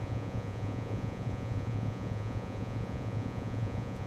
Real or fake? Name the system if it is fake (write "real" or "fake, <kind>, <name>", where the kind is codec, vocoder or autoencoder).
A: fake, vocoder, Vocos